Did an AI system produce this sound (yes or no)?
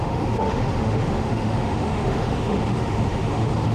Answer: yes